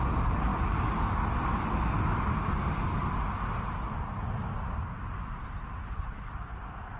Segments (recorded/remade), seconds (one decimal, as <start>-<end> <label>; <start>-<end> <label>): 0.0-5.8 recorded; 5.8-6.3 remade; 6.3-7.0 recorded